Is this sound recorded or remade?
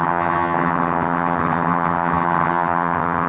remade